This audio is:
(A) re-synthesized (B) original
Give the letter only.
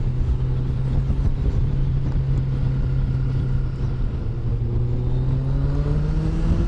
B